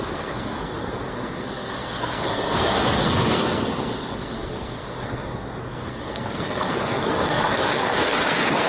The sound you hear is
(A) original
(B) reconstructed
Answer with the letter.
B